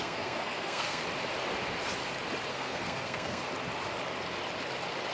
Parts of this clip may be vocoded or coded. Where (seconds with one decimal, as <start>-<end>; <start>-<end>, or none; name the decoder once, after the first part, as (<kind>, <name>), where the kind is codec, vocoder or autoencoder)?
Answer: 0.0-1.0 (codec, SNAC); 2.5-3.4